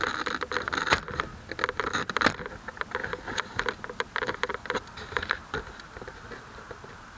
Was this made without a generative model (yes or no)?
yes